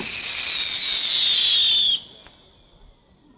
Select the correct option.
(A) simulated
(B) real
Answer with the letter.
B